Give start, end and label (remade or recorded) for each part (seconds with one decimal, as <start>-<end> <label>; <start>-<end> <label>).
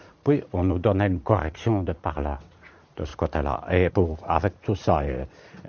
0.0-3.1 remade; 3.1-3.9 recorded; 3.9-5.7 remade